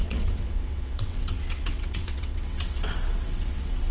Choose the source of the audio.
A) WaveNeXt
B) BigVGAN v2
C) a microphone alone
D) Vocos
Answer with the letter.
A